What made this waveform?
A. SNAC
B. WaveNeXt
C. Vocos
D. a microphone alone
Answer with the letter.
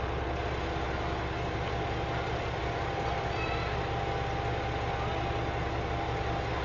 D